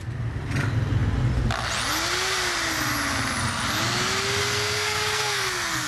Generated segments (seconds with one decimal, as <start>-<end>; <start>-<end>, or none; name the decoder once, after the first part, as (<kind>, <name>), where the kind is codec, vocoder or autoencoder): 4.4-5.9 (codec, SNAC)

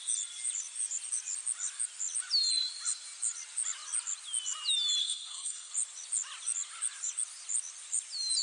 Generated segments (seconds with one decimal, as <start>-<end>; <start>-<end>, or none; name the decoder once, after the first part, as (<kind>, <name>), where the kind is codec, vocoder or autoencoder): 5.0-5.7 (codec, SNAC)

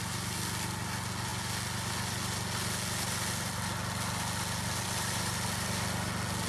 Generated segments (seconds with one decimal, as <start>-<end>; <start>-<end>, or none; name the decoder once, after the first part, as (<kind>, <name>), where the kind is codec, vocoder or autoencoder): none

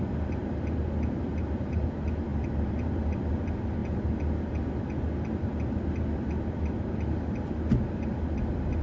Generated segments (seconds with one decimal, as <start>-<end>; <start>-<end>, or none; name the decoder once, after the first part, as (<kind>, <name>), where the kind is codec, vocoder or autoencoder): none

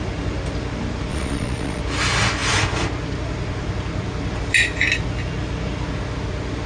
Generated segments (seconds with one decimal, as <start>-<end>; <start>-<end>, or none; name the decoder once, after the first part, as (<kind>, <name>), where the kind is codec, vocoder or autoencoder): 1.1-1.8 (vocoder, Vocos)

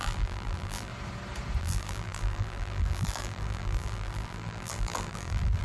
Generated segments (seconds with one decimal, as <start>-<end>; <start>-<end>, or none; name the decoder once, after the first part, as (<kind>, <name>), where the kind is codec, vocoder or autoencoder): 0.0-0.9 (vocoder, BigVGAN v2); 1.6-5.6